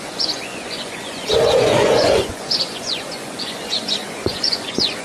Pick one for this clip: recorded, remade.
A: remade